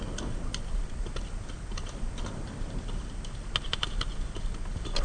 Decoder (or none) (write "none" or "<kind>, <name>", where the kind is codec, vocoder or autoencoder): none